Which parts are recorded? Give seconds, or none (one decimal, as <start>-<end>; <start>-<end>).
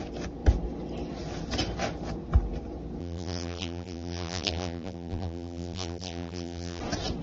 0.0-3.0; 6.8-7.2